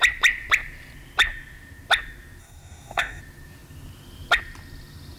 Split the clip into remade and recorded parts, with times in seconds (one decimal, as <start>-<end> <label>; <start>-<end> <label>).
0.0-2.4 recorded; 2.4-3.2 remade; 3.2-5.2 recorded